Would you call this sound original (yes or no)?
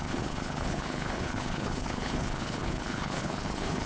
no